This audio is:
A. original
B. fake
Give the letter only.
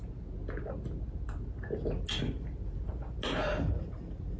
A